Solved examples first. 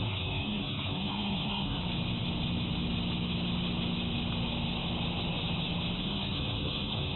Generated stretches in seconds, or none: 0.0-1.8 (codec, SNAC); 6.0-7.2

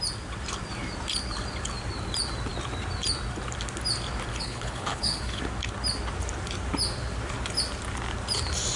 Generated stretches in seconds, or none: 4.3-5.4 (codec, HILCodec)

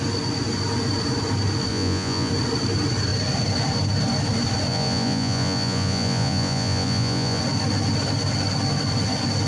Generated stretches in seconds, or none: 1.7-2.3 (vocoder, Vocos); 4.7-7.4